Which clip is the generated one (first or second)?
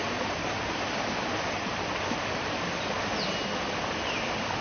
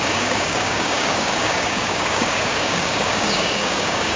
second